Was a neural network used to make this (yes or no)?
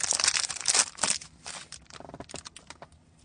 no